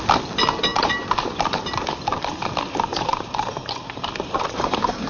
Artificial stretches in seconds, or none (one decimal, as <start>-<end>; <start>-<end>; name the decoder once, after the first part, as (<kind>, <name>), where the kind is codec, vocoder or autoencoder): 0.7-1.6 (vocoder, BigVGAN v2); 2.9-5.1